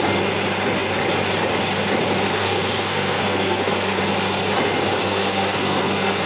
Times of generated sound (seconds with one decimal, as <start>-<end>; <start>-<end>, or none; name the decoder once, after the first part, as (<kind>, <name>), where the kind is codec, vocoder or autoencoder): 2.4-4.0 (codec, SNAC); 5.0-6.3